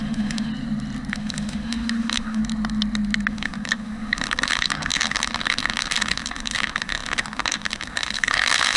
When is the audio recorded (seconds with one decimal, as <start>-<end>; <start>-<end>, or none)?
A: 0.5-1.1; 2.4-3.3